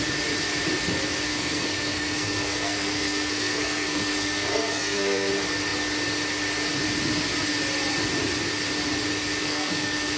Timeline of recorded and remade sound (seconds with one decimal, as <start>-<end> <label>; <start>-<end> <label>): 0.0-1.3 recorded; 1.3-5.3 remade; 5.3-9.4 recorded; 9.4-10.2 remade